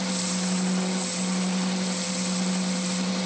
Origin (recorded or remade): recorded